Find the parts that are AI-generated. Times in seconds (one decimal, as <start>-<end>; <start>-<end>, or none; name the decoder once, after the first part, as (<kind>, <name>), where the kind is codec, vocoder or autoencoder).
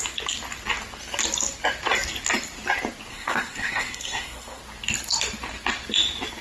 3.1-4.6 (codec, SNAC)